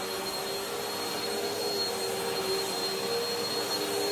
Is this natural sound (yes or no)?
yes